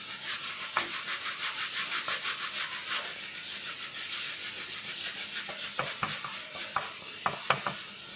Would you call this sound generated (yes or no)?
no